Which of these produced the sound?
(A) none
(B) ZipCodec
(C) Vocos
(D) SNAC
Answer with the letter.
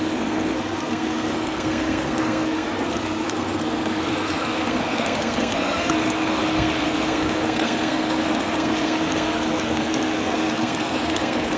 D